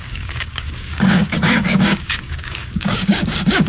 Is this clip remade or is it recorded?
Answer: remade